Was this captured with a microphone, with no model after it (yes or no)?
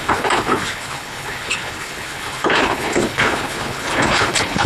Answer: no